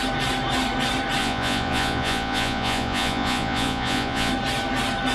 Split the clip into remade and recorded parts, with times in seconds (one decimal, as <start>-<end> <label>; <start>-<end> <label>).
0.0-1.2 recorded; 1.2-4.3 remade; 4.3-5.1 recorded

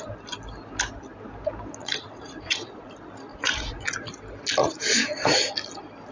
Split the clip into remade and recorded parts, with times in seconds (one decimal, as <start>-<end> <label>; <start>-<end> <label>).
0.0-1.8 recorded; 1.8-2.9 remade; 2.9-3.3 recorded; 3.3-3.8 remade; 3.8-4.6 recorded; 4.6-5.4 remade; 5.4-6.1 recorded

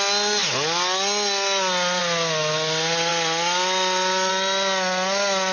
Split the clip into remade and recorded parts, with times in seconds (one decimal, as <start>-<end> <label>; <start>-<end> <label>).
0.0-5.5 recorded

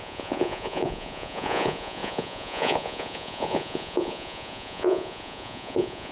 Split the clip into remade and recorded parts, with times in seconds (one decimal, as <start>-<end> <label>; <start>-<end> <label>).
0.0-6.1 remade

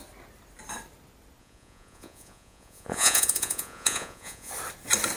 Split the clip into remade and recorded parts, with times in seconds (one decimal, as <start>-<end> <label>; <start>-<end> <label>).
0.0-1.4 recorded; 1.4-4.5 remade; 4.5-5.2 recorded

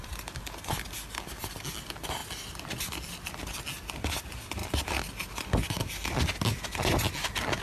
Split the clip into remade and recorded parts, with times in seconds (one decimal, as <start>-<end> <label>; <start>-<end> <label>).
0.0-7.6 recorded

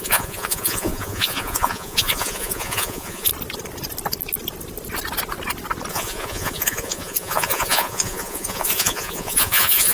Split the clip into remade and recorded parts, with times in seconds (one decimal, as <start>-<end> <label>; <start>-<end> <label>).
0.0-3.3 remade; 3.3-5.9 recorded; 5.9-9.9 remade

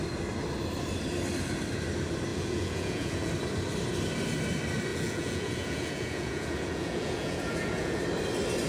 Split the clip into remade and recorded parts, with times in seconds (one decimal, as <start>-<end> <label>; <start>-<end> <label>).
0.0-2.3 recorded; 2.3-3.3 remade; 3.3-4.9 recorded; 4.9-8.0 remade; 8.0-8.7 recorded